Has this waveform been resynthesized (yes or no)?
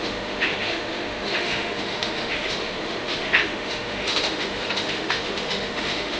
yes